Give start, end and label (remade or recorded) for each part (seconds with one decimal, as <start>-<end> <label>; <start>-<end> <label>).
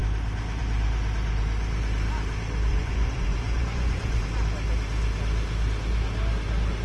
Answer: 0.0-2.7 recorded; 2.7-4.2 remade; 4.2-6.8 recorded